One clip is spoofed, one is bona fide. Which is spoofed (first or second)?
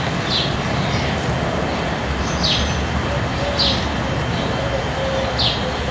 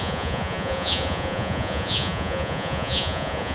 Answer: second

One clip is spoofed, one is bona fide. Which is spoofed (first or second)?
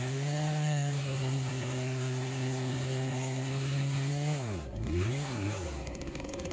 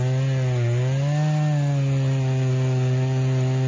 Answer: first